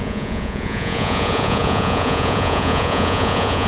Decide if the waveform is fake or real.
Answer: fake